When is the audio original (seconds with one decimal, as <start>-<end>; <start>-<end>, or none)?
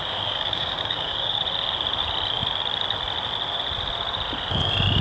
1.4-5.0